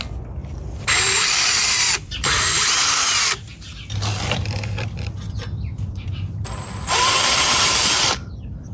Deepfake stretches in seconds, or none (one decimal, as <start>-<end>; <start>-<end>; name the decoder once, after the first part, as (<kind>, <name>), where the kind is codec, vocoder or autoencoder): 0.4-3.1 (vocoder, BigVGAN v2); 4.1-7.9